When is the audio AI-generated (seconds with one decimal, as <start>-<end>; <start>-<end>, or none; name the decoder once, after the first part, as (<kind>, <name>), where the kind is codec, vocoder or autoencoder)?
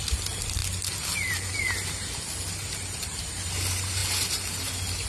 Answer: 0.0-0.6 (vocoder, BigVGAN v2); 3.3-4.0; 4.6-5.1